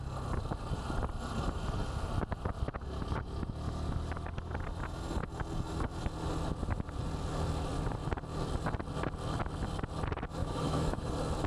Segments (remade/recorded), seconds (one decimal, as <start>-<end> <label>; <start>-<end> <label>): 0.0-10.4 recorded; 10.4-11.1 remade; 11.1-11.5 recorded